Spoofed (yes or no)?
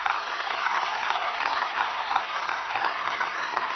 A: yes